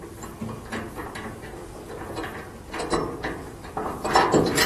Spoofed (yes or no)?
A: no